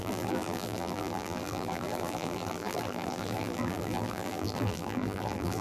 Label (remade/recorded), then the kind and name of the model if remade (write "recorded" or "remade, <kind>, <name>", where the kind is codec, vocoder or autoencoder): remade, vocoder, BigVGAN v2